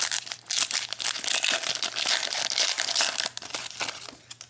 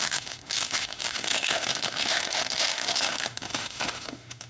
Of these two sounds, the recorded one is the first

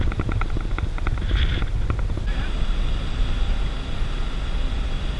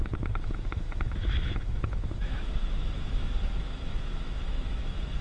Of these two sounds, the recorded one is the first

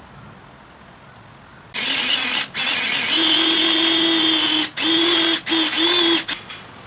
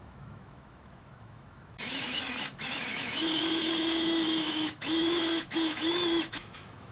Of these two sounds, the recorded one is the first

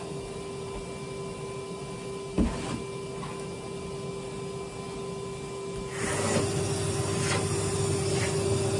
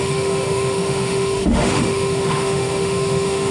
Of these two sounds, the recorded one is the first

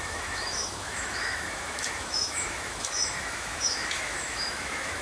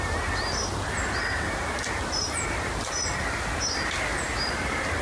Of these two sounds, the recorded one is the second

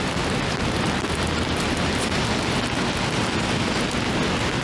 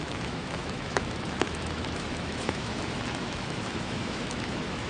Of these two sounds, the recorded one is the first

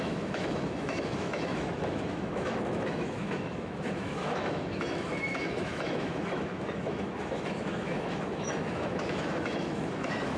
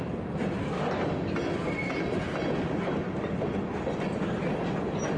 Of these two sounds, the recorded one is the second